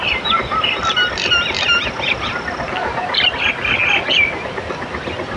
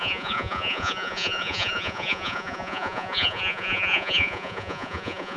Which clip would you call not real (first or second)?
second